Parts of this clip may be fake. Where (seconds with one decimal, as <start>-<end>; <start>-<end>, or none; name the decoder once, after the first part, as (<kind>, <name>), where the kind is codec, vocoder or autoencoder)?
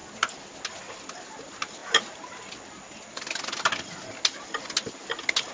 none